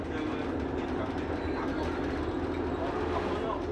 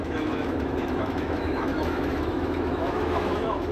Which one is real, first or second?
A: first